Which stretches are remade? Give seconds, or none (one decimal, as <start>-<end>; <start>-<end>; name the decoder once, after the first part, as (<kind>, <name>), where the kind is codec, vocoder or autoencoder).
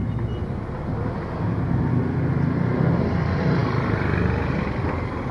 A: none